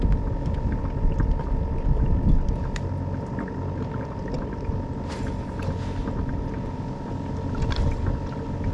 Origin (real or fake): real